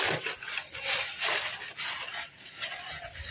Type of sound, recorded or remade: recorded